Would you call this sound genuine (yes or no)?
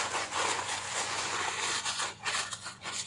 no